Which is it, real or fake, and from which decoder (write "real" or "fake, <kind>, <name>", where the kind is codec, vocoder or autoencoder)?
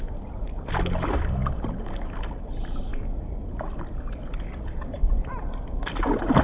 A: real